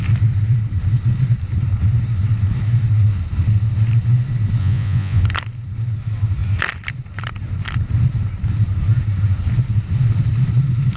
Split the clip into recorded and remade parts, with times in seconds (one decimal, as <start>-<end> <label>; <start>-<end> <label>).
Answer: 0.0-4.6 recorded; 4.6-5.2 remade; 5.2-11.0 recorded